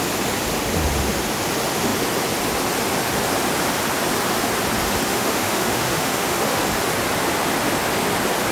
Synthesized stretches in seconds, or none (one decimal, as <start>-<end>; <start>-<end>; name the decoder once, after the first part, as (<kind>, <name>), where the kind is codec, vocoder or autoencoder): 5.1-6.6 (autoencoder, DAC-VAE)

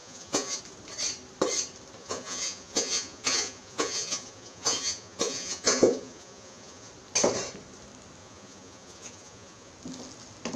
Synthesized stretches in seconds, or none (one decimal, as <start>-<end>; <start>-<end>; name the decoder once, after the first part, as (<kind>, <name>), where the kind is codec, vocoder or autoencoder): 0.0-0.6 (vocoder, Vocos); 2.0-6.9; 8.2-9.7

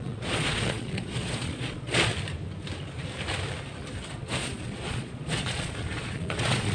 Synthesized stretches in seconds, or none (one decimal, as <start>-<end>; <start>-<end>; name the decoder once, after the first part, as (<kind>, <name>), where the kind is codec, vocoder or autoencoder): 0.0-2.1 (vocoder, Vocos); 4.1-6.7

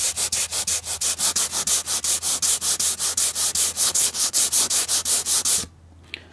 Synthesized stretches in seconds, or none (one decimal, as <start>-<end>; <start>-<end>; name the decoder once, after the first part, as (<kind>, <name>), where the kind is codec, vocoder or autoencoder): 3.8-4.4 (codec, HILCodec)

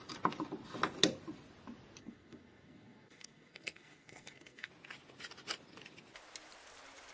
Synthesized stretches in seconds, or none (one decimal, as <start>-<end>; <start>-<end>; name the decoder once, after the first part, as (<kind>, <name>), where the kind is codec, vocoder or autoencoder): 2.0-4.7 (codec, SNAC)